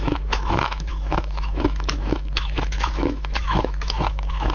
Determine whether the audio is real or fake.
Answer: fake